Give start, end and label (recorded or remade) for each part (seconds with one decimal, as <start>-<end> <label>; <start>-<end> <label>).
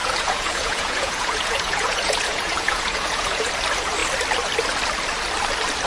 0.0-3.5 remade; 3.5-5.9 recorded